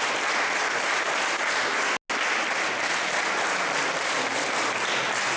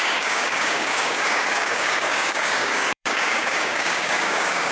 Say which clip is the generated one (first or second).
second